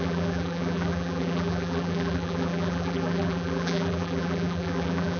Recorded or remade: remade